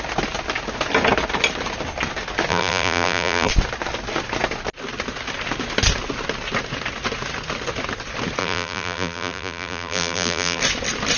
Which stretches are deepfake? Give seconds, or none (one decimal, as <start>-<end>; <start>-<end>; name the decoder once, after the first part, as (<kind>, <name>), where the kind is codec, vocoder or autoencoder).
2.5-3.5 (vocoder, BigVGAN v2); 8.4-10.6